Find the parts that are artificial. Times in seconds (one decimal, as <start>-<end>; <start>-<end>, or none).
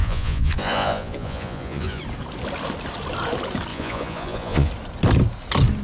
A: 0.0-2.0; 3.7-4.7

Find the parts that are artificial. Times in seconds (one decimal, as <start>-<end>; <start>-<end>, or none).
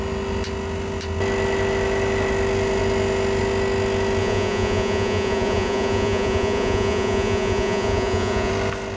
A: 4.2-8.5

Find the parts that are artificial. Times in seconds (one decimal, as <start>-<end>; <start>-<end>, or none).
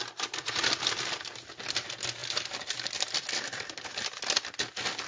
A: none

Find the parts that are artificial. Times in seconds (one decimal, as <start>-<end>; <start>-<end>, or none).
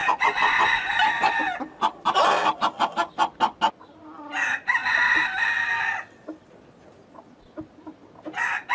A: 0.0-0.9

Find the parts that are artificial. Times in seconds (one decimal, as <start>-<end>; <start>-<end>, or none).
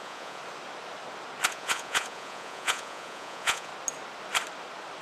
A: 0.0-0.4; 1.5-3.7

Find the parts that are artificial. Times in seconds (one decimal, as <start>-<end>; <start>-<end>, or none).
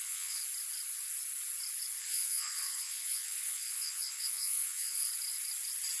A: 0.0-0.4; 2.0-5.1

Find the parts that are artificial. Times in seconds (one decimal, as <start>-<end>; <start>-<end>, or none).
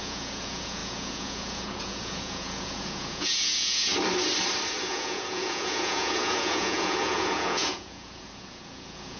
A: 0.0-3.9; 4.8-9.2